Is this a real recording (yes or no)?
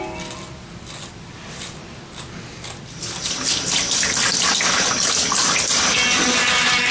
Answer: yes